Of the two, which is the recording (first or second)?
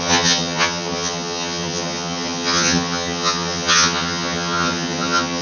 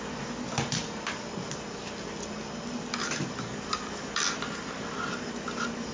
second